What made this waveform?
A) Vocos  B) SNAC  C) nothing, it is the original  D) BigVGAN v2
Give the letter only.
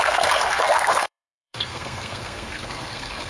B